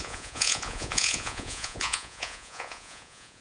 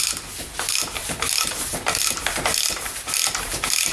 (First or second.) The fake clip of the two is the first